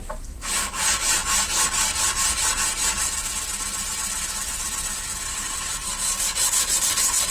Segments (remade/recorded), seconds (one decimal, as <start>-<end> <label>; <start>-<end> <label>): 0.0-7.3 recorded